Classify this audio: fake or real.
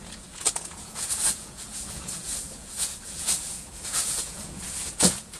fake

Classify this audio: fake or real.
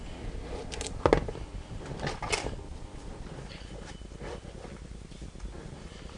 real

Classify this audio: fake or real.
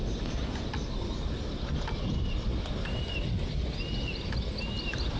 real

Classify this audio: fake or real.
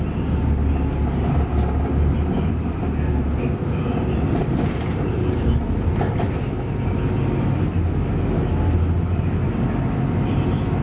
real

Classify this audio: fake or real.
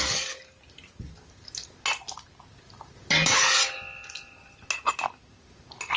real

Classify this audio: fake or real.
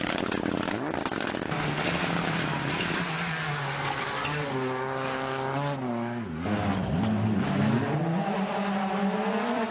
real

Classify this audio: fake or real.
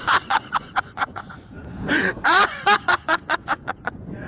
fake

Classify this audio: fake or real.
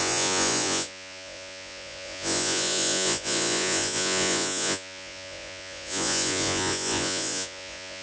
fake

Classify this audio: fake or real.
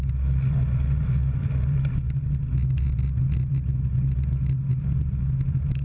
real